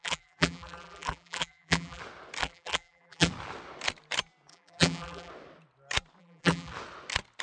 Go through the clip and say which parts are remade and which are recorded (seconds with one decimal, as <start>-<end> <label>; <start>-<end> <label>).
0.0-2.0 remade; 2.0-2.4 recorded; 2.4-3.3 remade; 3.3-4.5 recorded; 4.5-5.3 remade; 5.3-6.2 recorded; 6.2-6.7 remade; 6.7-7.4 recorded